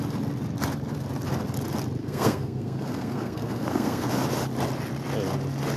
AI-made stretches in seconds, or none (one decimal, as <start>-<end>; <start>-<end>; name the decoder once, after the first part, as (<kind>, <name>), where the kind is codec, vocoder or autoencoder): 2.0-4.1 (codec, SNAC)